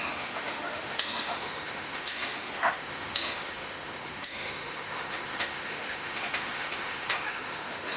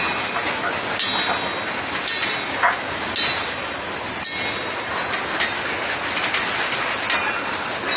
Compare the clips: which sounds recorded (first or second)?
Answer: second